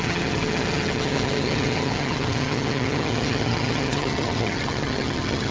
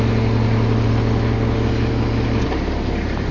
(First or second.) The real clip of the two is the second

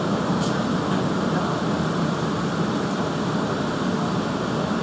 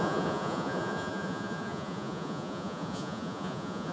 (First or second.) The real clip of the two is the first